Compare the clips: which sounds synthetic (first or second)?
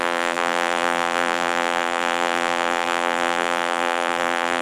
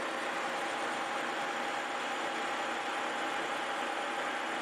first